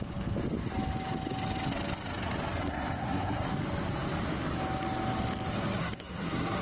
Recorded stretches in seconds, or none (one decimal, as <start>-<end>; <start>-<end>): 0.0-2.6; 3.5-5.8